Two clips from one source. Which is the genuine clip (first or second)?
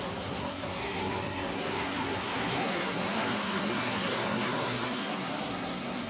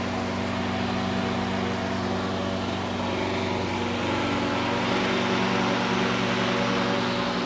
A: second